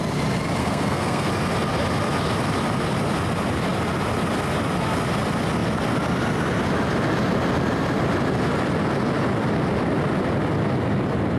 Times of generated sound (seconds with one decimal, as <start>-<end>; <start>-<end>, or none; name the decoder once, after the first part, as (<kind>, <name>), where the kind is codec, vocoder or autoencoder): 0.6-1.3 (codec, SNAC)